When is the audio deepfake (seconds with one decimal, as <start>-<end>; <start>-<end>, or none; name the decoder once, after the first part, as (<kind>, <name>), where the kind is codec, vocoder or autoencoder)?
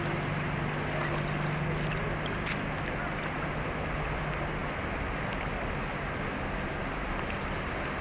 none